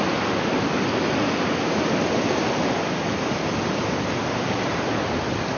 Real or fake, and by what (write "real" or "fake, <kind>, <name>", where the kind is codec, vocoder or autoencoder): real